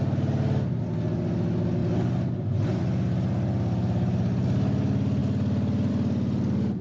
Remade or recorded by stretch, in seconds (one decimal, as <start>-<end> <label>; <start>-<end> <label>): 0.0-6.8 recorded